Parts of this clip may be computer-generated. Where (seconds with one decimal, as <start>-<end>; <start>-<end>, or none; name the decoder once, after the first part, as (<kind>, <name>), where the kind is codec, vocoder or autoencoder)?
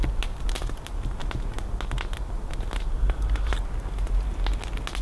none